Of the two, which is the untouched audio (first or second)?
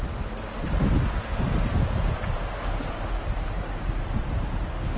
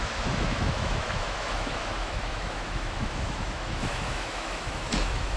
first